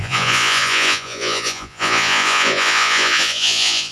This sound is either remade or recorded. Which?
remade